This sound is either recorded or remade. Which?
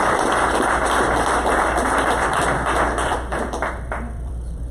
remade